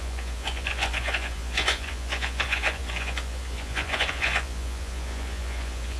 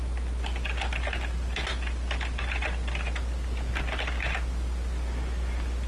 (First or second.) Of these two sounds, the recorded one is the second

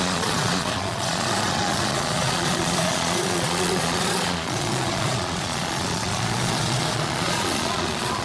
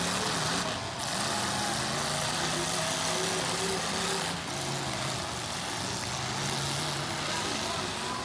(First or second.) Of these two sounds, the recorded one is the second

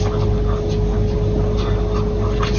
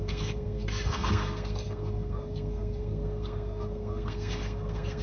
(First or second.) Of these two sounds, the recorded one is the first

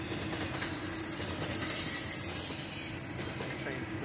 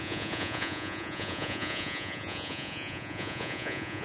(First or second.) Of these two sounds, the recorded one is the first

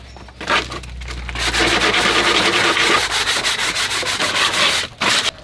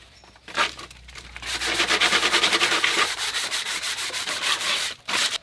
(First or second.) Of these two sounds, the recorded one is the first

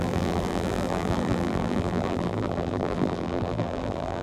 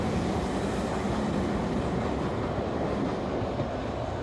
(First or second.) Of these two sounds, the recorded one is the second